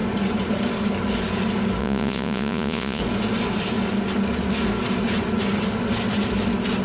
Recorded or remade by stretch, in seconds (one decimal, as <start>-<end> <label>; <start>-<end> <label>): 0.0-1.8 recorded; 1.8-3.0 remade; 3.0-6.8 recorded